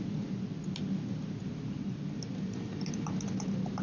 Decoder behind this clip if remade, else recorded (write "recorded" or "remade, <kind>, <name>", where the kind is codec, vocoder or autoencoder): recorded